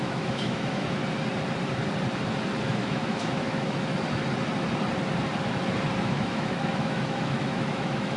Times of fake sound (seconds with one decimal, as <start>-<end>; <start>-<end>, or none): 0.0-1.0; 2.6-3.9; 6.0-8.2